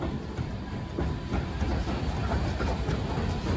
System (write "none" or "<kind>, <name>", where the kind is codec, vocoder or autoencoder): none